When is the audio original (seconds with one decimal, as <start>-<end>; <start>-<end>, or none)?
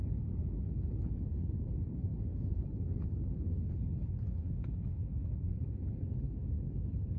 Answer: none